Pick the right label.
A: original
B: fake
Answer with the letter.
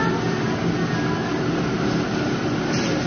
A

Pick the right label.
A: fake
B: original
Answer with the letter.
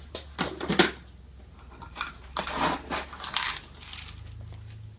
B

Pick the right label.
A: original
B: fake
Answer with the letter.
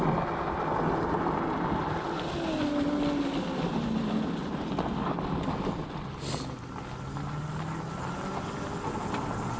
A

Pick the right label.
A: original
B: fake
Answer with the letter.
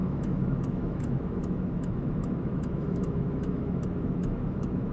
B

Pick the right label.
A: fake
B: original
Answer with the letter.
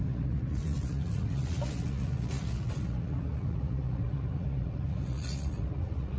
A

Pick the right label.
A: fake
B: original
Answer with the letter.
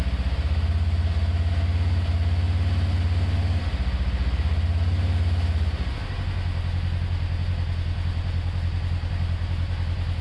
B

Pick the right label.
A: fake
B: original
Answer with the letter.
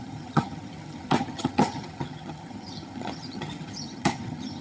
A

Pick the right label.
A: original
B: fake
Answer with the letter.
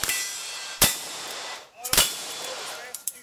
B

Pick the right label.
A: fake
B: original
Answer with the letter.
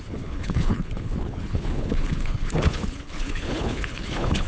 A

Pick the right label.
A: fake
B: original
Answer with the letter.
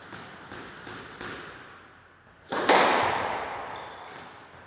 B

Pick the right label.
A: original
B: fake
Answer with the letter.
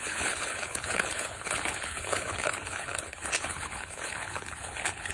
B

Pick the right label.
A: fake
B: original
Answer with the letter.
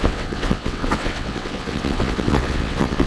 A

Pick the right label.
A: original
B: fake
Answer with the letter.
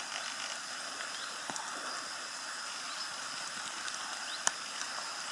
A